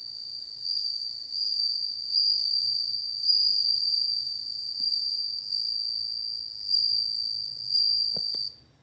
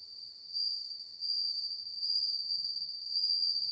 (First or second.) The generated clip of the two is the second